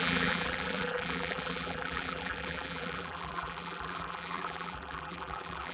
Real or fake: fake